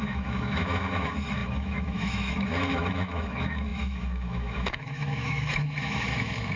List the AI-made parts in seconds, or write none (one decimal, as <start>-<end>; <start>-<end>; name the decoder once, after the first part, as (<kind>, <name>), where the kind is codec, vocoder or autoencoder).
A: 0.0-6.6 (autoencoder, DAC-VAE)